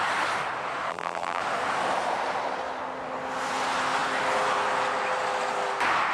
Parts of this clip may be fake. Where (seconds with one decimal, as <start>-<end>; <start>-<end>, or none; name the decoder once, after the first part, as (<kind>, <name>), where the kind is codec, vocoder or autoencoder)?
0.9-1.4 (vocoder, BigVGAN v2)